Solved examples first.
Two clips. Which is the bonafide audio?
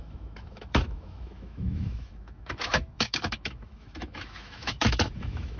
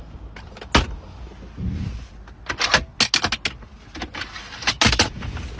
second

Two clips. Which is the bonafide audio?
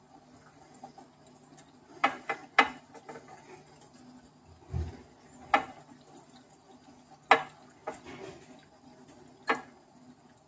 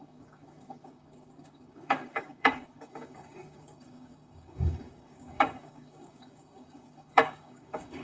first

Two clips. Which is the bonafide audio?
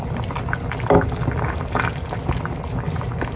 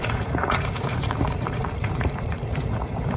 first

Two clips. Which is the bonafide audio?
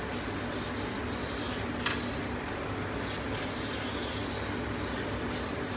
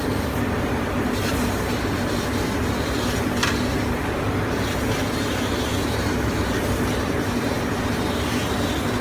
first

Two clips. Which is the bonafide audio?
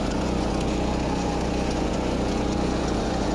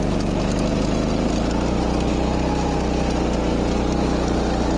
second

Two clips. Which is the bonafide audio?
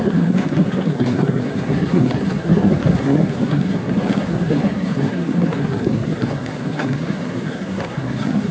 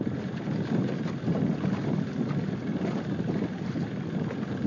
second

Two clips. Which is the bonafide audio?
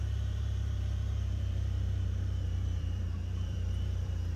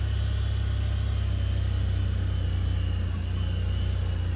second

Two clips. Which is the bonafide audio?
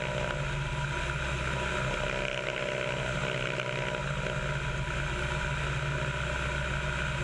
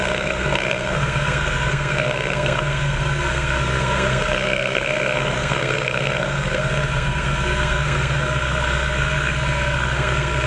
first